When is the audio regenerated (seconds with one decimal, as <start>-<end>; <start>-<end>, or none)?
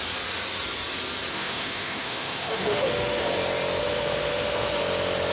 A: 1.3-3.2; 3.8-4.8